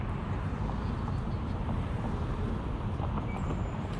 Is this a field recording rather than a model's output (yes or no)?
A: yes